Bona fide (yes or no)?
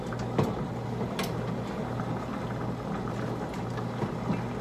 yes